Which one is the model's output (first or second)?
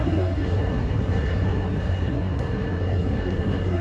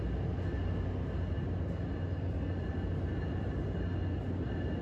first